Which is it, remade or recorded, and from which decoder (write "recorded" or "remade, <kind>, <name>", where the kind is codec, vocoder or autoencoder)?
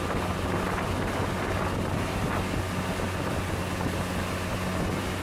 recorded